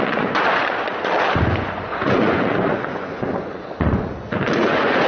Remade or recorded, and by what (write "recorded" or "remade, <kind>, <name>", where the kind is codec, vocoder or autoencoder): remade, vocoder, Vocos